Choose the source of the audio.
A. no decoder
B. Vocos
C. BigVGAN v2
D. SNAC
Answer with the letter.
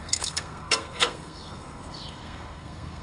D